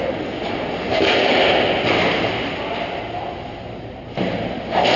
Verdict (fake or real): real